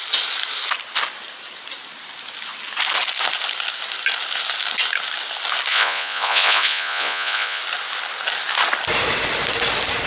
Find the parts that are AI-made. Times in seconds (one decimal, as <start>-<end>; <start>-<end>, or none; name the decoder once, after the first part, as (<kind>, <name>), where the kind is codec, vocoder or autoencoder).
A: 5.7-7.6 (vocoder, Vocos)